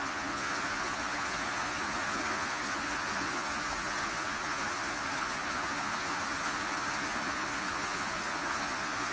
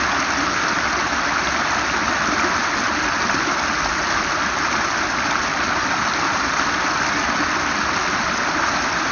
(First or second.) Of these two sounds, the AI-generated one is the first